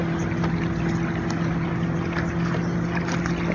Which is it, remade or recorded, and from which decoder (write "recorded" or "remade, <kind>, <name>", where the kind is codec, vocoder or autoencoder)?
recorded